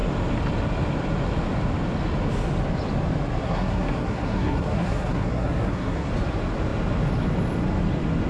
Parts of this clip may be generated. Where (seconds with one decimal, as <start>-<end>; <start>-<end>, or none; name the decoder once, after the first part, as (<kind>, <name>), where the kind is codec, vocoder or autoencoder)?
3.4-6.1 (codec, SNAC)